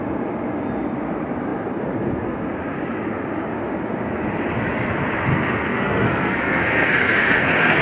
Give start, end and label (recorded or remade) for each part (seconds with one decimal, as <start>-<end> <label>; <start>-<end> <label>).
0.0-5.3 recorded; 5.3-7.8 remade